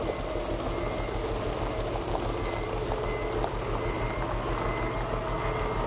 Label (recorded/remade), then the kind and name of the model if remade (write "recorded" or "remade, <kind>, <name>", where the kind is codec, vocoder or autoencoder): recorded